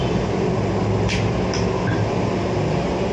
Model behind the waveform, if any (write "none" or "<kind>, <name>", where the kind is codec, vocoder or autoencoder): none